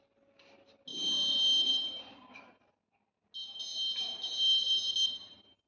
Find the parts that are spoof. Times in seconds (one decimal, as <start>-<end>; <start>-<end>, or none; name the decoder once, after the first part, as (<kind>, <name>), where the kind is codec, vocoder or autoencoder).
none